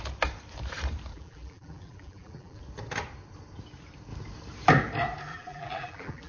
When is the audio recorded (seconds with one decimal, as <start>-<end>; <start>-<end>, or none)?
0.0-1.1; 2.6-5.3